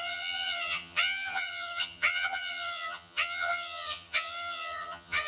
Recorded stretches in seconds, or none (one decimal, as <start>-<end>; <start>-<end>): none